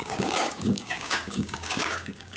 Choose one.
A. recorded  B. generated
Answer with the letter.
B